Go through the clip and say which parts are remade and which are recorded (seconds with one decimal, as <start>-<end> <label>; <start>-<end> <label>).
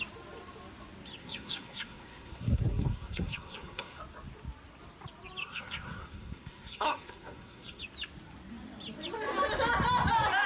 0.0-1.2 recorded; 1.2-4.0 remade; 4.0-5.4 recorded; 5.4-7.8 remade; 7.8-10.5 recorded